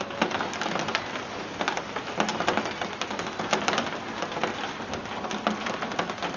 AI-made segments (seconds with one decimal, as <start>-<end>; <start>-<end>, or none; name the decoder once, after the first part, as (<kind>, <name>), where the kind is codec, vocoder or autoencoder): none